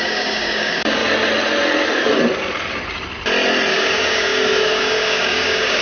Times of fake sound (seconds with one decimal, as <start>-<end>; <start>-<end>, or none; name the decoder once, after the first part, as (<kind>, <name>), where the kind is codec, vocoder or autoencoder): 0.0-1.0 (codec, DAC); 3.7-5.8